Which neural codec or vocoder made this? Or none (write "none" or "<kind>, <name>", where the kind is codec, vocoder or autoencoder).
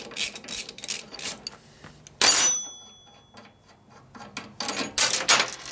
none